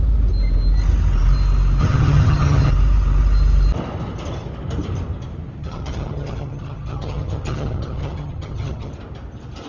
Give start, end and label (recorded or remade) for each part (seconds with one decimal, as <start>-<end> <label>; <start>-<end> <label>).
0.0-1.8 recorded; 1.8-2.7 remade; 2.7-5.6 recorded; 5.6-8.9 remade; 8.9-9.7 recorded